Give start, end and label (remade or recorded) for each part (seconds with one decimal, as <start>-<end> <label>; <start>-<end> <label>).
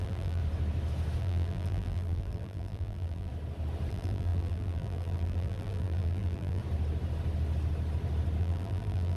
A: 0.0-0.4 remade; 0.4-1.2 recorded; 1.2-3.3 remade; 3.3-3.9 recorded; 3.9-6.6 remade; 6.6-8.4 recorded; 8.4-9.2 remade